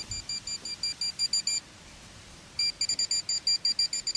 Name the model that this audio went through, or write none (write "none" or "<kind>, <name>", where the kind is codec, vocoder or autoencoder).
none